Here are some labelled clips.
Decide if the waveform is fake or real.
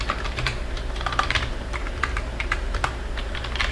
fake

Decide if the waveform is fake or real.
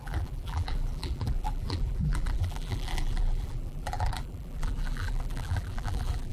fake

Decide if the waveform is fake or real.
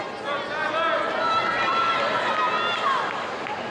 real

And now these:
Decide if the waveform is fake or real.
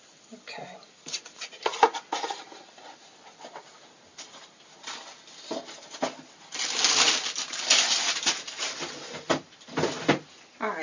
real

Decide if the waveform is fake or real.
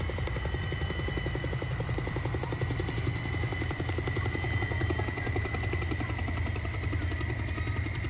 fake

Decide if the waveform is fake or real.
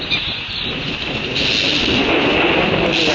real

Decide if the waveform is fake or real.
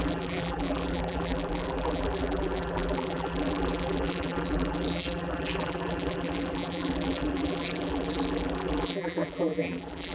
fake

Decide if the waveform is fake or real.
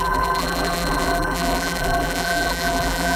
fake